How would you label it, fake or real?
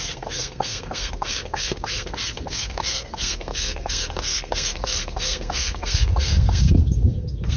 fake